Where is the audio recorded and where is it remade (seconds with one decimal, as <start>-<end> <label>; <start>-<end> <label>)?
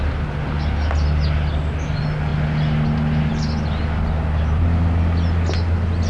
0.0-6.1 recorded